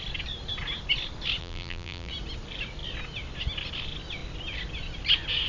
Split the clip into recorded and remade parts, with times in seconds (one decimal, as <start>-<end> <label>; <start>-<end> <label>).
0.0-1.4 recorded; 1.4-2.1 remade; 2.1-5.5 recorded

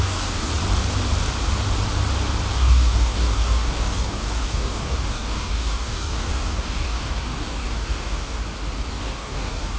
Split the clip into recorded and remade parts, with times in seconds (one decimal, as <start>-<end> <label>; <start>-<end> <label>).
0.0-0.5 remade; 0.5-2.5 recorded; 2.5-8.4 remade; 8.4-8.9 recorded; 8.9-9.8 remade

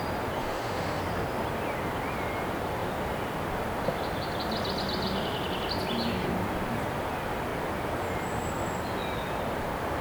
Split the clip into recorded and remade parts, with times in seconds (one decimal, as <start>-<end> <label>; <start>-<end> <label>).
0.0-0.4 recorded; 0.4-1.0 remade; 1.0-10.0 recorded

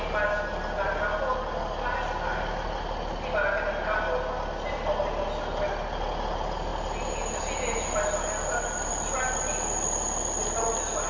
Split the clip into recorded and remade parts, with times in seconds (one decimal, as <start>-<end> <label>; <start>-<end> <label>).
0.0-11.1 recorded

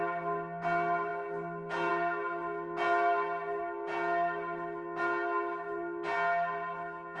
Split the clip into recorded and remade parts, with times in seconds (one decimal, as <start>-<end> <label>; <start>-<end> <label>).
0.0-7.2 recorded

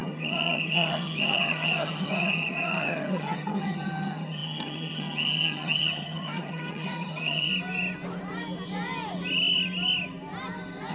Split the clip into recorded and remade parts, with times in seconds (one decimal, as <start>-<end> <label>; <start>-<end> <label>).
0.0-7.5 remade; 7.5-10.9 recorded

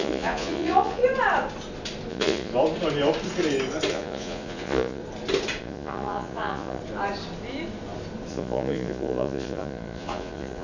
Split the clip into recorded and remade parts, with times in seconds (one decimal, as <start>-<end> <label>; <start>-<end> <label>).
0.0-1.0 remade; 1.0-2.1 recorded; 2.1-2.5 remade; 2.5-3.9 recorded; 3.9-5.0 remade; 5.0-5.6 recorded; 5.6-6.8 remade; 6.8-8.3 recorded; 8.3-10.6 remade